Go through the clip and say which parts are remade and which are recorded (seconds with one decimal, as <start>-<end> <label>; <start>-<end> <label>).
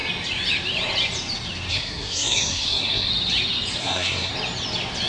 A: 0.0-1.7 recorded; 1.7-3.1 remade; 3.1-3.8 recorded; 3.8-4.3 remade; 4.3-5.1 recorded